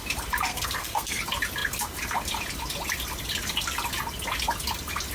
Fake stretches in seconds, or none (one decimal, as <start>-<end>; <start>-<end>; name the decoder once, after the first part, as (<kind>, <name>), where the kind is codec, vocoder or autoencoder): 0.5-1.2 (codec, SNAC)